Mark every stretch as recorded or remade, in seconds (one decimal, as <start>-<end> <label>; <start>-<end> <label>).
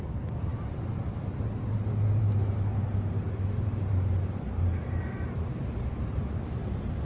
0.0-0.5 remade; 0.5-2.2 recorded; 2.2-7.0 remade